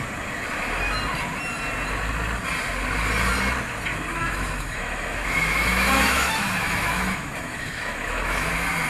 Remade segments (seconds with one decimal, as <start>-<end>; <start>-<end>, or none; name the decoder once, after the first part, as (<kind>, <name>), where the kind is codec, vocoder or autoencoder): 4.1-8.5 (autoencoder, DAC-VAE)